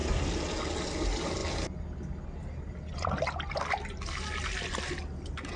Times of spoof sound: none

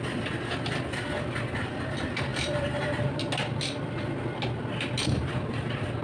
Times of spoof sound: 2.3-3.2 (vocoder, BigVGAN v2)

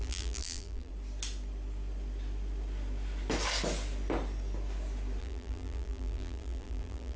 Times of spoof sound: 0.0-0.9 (vocoder, BigVGAN v2); 5.2-7.2